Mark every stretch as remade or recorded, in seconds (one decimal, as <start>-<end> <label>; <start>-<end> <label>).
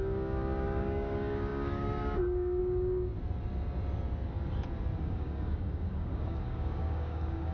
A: 0.0-3.1 remade; 3.1-5.0 recorded; 5.0-7.5 remade